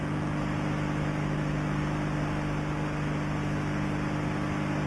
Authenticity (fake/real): real